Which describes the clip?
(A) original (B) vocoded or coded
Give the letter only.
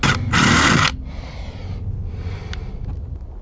A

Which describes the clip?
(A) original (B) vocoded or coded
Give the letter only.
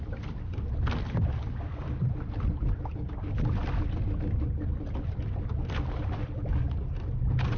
A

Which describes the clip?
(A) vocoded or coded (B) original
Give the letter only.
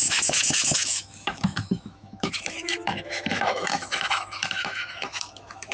A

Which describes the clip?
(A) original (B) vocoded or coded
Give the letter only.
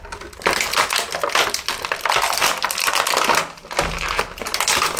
A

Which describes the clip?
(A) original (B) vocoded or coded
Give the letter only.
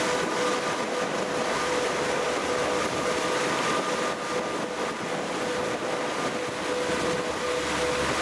A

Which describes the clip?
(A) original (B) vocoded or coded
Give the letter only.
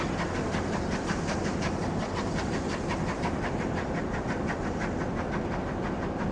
A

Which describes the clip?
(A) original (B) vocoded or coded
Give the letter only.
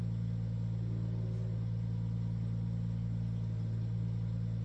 A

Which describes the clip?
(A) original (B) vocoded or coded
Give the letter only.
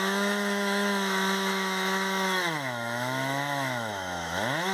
B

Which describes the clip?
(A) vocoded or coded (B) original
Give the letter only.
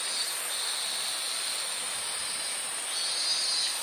B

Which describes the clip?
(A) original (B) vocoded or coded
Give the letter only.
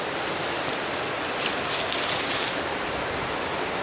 A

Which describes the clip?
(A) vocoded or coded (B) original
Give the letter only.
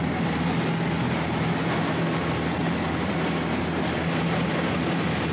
B